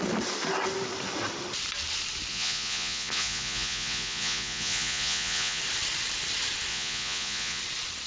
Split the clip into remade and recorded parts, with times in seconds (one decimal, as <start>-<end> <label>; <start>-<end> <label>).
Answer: 0.0-2.3 recorded; 2.3-5.6 remade; 5.6-6.7 recorded; 6.7-7.6 remade; 7.6-8.1 recorded